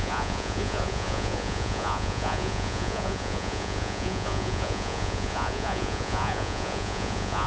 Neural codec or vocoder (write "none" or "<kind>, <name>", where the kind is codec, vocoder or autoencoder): vocoder, Vocos